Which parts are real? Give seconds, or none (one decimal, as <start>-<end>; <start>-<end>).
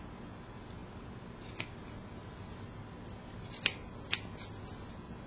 0.0-5.3